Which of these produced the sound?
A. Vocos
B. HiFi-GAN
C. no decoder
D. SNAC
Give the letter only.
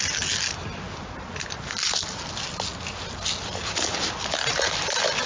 C